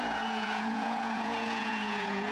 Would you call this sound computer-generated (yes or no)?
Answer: yes